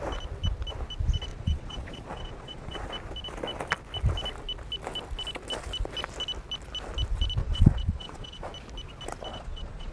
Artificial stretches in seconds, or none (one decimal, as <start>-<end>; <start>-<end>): 1.3-2.9; 7.4-8.5; 9.3-9.9